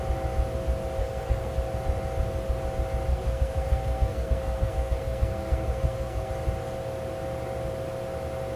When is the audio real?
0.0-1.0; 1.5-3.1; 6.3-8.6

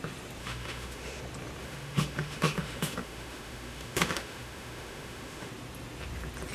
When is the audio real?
0.0-0.4; 1.2-1.6; 5.5-6.5

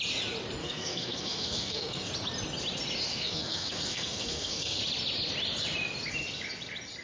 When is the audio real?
0.0-0.6; 2.1-3.1; 4.8-7.0

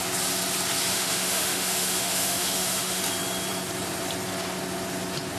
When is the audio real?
0.0-0.9; 3.0-5.4

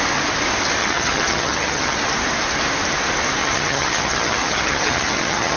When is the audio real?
0.0-0.8; 2.0-3.4

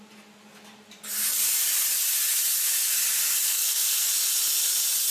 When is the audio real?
0.0-3.5; 4.1-5.1

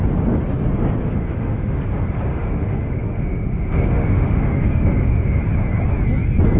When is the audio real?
0.0-1.3; 1.8-2.3; 5.4-6.6